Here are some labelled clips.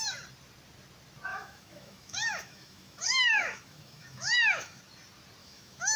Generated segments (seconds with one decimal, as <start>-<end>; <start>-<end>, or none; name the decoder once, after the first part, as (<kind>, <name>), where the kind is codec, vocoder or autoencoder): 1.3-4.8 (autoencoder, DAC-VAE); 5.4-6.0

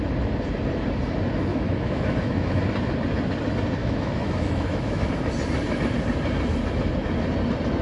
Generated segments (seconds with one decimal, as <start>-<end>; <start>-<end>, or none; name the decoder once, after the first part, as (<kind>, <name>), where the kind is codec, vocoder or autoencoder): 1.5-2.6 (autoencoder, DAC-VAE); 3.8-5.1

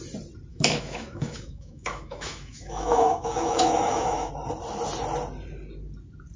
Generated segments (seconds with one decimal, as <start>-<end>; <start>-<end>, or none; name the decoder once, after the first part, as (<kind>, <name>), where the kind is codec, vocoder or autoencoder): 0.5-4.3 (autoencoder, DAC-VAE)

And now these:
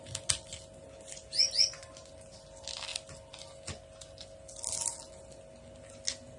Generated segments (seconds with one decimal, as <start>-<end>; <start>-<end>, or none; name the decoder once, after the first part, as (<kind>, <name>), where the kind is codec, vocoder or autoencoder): none